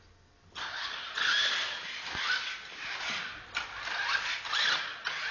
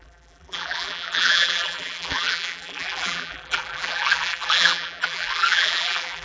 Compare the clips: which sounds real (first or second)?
first